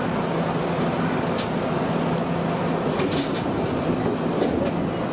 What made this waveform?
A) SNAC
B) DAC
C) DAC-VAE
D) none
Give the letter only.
D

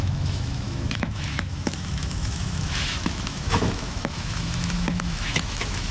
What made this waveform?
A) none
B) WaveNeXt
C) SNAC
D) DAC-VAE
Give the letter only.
D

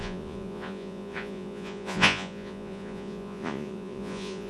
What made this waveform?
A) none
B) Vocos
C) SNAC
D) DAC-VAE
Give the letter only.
B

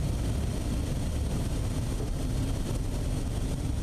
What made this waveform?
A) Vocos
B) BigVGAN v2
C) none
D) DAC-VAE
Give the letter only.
C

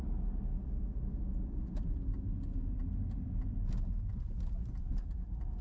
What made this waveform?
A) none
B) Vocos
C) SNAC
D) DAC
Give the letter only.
A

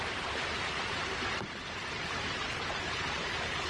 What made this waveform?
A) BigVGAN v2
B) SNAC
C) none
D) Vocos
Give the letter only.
A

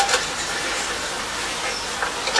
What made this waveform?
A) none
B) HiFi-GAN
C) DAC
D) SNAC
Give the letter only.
A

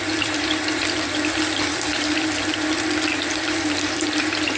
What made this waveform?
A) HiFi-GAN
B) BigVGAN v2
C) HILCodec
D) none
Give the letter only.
B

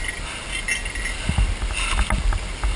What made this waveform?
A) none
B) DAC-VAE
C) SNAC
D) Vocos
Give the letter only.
A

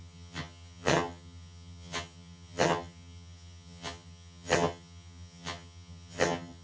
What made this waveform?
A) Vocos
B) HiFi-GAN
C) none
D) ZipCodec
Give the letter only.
B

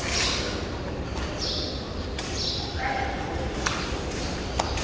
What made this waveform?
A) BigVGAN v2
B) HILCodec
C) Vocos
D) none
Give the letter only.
D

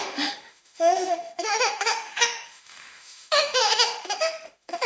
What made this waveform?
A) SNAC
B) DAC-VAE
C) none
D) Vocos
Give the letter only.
B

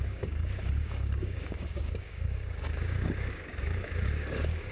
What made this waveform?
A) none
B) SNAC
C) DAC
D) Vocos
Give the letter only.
C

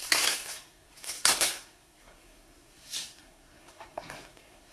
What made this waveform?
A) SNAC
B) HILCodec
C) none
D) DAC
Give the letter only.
A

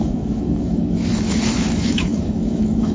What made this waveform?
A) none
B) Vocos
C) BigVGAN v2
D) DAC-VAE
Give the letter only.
D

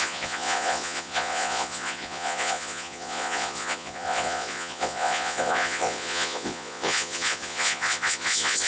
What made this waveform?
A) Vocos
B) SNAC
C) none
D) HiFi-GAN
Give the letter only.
A